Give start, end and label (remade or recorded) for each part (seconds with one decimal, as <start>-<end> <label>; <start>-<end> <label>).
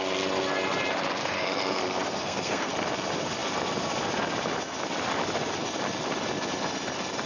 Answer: 0.0-1.2 recorded; 1.2-1.8 remade; 1.8-2.2 recorded; 2.2-2.7 remade; 2.7-7.3 recorded